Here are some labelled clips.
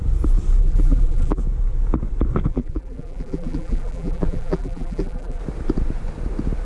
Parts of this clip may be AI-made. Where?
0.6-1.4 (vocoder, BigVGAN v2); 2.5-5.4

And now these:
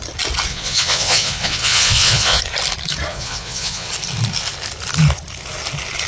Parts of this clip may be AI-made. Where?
0.5-2.4 (vocoder, Vocos); 3.1-3.9

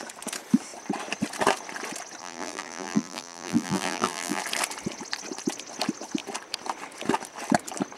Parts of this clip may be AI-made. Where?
2.2-4.4 (vocoder, BigVGAN v2)

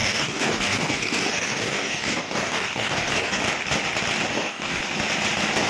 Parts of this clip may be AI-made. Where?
0.0-3.4 (codec, DAC); 4.3-4.8

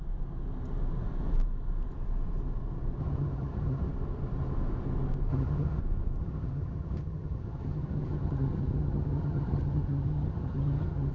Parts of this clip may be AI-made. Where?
3.0-3.9 (vocoder, HiFi-GAN); 5.3-5.8; 6.2-11.1

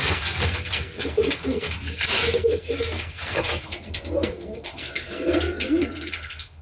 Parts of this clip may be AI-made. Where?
0.0-6.6 (codec, SNAC)

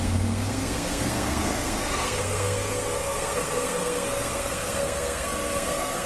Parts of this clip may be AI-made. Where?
0.0-6.1 (codec, SNAC)